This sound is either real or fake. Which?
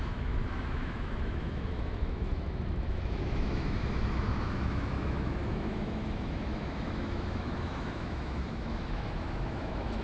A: fake